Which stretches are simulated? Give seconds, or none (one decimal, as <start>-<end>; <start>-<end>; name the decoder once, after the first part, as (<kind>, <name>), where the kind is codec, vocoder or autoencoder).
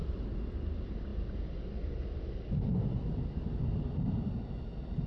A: none